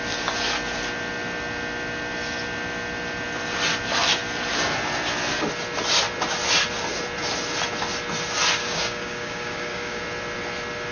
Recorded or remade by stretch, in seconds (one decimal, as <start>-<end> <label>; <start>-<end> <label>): 0.0-8.6 recorded; 8.6-10.0 remade; 10.0-10.9 recorded